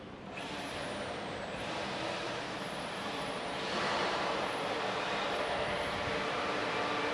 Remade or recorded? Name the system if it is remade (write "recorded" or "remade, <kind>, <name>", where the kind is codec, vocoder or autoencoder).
remade, vocoder, BigVGAN v2